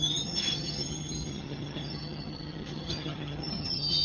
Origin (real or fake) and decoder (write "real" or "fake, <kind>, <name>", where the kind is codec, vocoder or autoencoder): fake, vocoder, HiFi-GAN